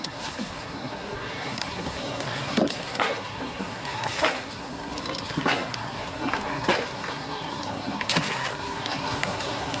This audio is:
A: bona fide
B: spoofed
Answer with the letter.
B